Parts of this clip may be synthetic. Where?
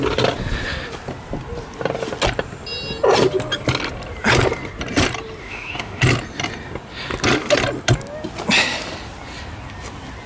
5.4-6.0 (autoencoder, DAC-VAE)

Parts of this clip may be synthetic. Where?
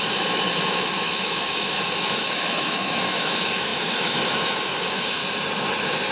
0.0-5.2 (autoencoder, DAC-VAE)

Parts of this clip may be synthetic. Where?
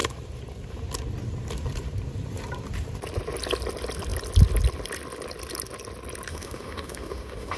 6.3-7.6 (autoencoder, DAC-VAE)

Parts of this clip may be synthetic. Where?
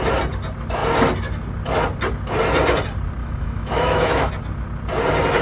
3.2-4.3 (autoencoder, DAC-VAE)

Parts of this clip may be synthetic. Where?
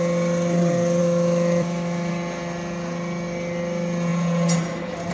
1.0-2.1 (autoencoder, DAC-VAE)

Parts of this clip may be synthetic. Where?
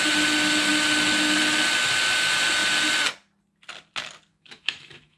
4.3-5.2 (autoencoder, DAC-VAE)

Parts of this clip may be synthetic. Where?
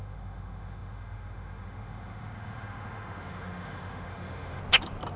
0.0-4.6 (autoencoder, DAC-VAE)